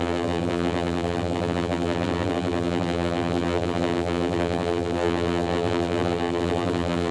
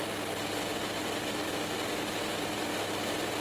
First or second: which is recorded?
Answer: second